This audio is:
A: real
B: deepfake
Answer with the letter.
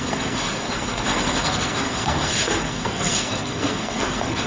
B